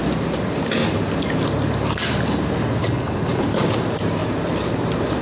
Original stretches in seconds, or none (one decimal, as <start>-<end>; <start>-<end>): 0.0-2.8; 3.6-5.2